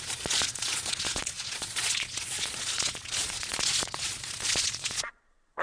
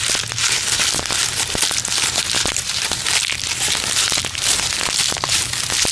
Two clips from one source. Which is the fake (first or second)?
first